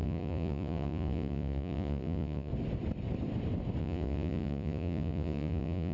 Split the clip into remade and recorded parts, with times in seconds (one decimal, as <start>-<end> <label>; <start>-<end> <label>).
0.0-2.5 remade; 2.5-3.8 recorded; 3.8-5.9 remade